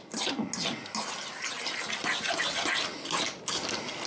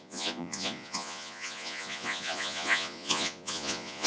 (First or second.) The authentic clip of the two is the first